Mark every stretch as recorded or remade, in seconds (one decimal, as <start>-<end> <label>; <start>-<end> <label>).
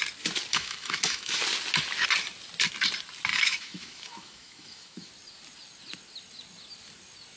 0.0-0.5 recorded; 0.5-1.4 remade; 1.4-3.3 recorded; 3.3-5.1 remade; 5.1-7.4 recorded